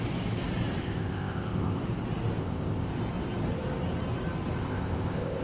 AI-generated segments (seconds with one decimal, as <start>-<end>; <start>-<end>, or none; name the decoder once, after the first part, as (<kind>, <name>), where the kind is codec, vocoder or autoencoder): 0.8-1.8 (codec, ZipCodec); 2.4-2.9; 4.6-5.4